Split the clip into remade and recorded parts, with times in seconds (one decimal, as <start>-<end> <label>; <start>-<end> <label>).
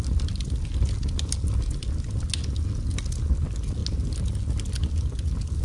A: 0.0-5.6 recorded